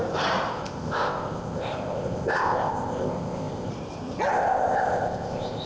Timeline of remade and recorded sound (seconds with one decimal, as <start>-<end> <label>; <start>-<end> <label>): 0.0-0.5 recorded; 0.5-3.7 remade; 3.7-4.3 recorded; 4.3-5.7 remade